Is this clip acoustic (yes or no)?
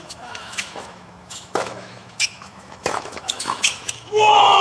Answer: no